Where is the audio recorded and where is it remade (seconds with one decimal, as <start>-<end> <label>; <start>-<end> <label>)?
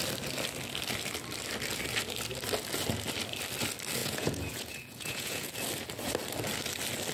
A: 0.0-4.0 recorded; 4.0-5.5 remade; 5.5-7.1 recorded